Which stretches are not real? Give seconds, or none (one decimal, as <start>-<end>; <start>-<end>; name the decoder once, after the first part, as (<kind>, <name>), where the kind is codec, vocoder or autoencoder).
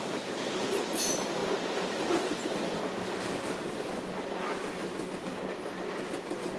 none